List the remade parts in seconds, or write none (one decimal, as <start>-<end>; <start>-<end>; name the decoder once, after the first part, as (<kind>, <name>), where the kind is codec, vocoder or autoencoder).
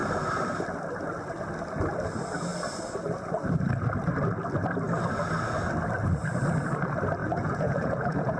7.2-8.4 (vocoder, Vocos)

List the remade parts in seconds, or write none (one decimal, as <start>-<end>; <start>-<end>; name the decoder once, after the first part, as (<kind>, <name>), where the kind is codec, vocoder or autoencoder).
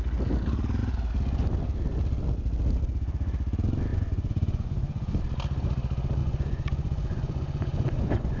3.9-5.2 (vocoder, Vocos); 6.2-8.4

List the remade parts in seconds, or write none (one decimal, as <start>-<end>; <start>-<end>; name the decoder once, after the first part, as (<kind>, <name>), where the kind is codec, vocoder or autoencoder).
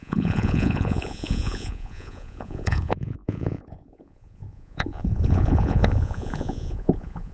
0.0-7.3 (vocoder, Vocos)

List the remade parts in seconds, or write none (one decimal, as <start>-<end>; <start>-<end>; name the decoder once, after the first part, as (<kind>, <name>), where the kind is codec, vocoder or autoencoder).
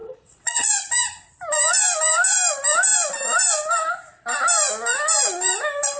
0.0-0.7 (vocoder, Vocos)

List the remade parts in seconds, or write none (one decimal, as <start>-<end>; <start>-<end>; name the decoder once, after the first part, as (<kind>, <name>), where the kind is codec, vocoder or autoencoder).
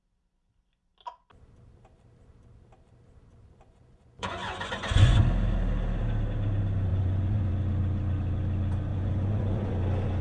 3.3-5.2 (vocoder, Vocos); 6.9-7.5; 8.9-9.7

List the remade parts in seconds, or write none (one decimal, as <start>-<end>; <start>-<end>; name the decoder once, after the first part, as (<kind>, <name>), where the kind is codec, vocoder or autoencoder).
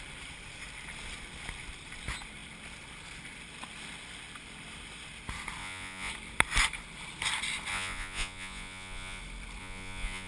5.6-6.1 (vocoder, Vocos); 7.7-9.2; 9.6-10.3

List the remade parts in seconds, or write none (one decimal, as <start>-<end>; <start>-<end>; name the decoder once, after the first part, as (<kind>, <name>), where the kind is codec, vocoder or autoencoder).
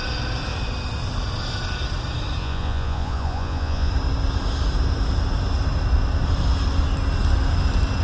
2.4-3.9 (vocoder, Vocos)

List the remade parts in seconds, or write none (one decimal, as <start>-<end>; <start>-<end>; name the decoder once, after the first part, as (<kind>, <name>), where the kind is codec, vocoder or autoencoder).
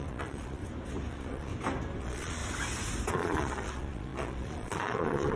0.0-0.6 (vocoder, Vocos); 1.1-1.5; 2.0-2.4; 3.1-5.4